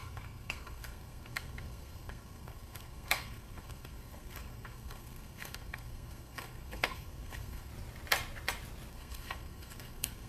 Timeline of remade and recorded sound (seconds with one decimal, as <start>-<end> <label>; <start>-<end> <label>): 0.0-7.7 remade; 7.7-8.9 recorded; 8.9-10.3 remade